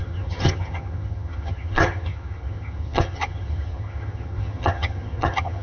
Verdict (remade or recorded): remade